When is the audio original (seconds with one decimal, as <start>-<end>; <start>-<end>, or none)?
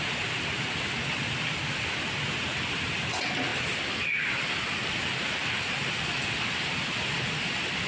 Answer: 0.0-7.9